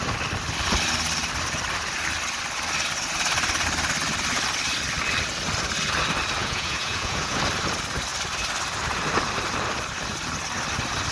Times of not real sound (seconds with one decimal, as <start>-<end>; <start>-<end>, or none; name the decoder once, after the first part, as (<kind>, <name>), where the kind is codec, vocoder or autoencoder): 6.4-7.4 (vocoder, Vocos)